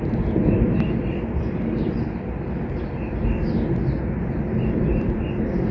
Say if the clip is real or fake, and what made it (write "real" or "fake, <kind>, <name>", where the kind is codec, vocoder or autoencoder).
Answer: real